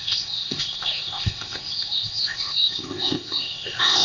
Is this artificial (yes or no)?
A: yes